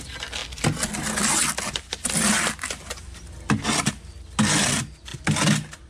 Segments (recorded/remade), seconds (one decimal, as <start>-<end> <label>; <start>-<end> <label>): 0.0-5.9 recorded